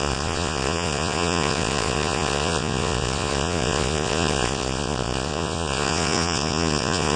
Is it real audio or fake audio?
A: fake